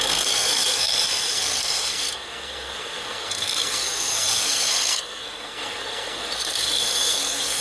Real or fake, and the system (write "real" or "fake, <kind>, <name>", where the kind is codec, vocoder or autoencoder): fake, codec, SNAC